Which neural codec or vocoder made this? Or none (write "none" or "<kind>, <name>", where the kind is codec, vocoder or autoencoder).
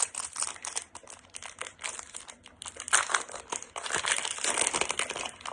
none